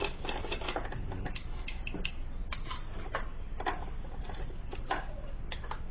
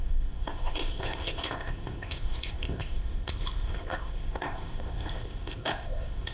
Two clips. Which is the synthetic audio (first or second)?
second